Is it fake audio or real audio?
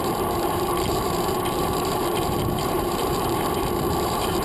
fake